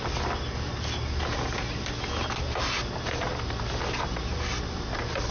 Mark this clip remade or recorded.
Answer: recorded